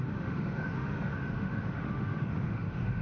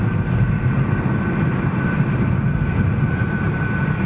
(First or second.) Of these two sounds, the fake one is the first